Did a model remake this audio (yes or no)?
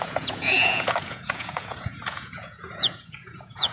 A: yes